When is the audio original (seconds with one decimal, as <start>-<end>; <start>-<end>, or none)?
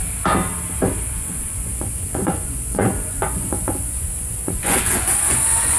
0.0-1.1